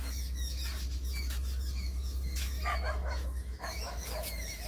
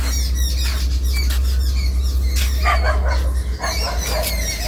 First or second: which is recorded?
second